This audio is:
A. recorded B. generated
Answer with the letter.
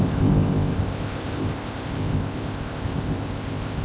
B